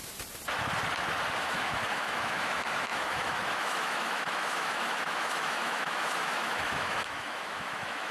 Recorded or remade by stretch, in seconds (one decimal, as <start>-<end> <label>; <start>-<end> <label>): 0.0-1.4 recorded; 1.4-8.1 remade